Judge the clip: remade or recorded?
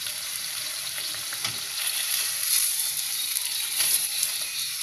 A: remade